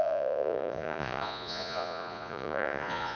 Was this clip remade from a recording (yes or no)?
yes